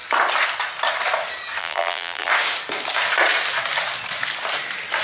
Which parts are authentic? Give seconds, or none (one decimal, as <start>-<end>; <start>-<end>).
0.0-1.6; 2.3-5.0